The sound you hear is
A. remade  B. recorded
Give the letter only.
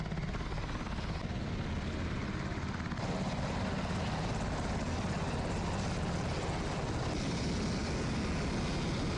B